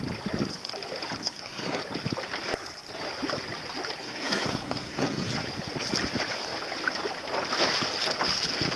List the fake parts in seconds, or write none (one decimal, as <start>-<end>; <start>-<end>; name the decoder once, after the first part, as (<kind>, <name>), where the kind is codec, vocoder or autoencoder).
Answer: 1.2-1.8 (codec, SNAC); 4.0-5.3